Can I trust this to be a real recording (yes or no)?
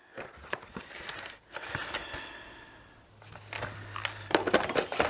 yes